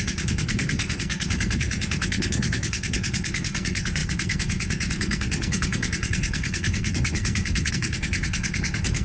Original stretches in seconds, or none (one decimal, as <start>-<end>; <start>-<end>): none